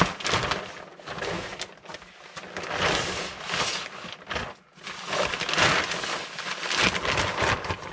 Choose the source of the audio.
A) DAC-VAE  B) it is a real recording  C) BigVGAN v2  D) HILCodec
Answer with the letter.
B